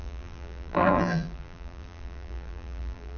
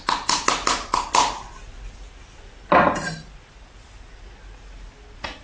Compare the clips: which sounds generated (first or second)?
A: first